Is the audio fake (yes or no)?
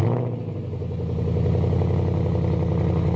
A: no